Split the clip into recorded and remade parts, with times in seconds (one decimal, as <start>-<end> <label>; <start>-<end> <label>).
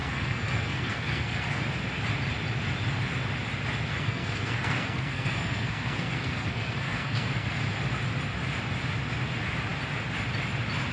0.0-1.6 remade; 1.6-3.9 recorded; 3.9-7.6 remade; 7.6-10.9 recorded